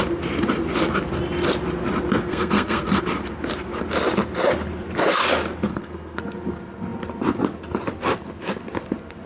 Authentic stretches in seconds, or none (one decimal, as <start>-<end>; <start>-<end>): 0.0-2.3; 3.0-5.7; 6.2-9.3